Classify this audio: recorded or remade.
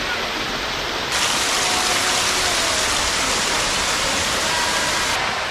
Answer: recorded